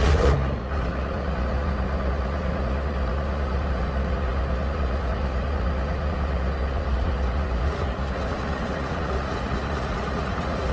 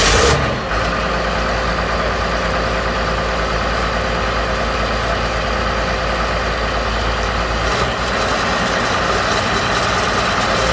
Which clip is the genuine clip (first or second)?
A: second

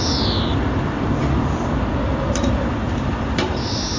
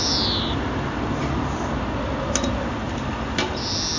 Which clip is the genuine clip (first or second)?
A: second